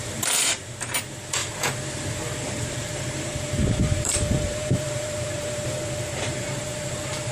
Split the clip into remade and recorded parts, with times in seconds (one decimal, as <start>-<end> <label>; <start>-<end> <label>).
0.0-7.3 remade